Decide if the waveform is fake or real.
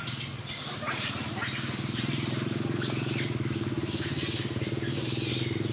real